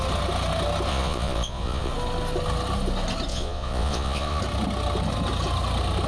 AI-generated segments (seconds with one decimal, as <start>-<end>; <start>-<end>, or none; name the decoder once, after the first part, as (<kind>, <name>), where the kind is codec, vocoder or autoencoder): 0.9-1.9 (vocoder, Vocos); 3.3-4.4